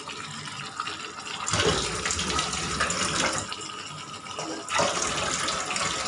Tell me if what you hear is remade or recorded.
recorded